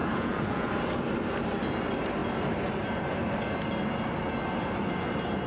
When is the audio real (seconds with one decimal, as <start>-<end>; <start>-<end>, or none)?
0.7-5.5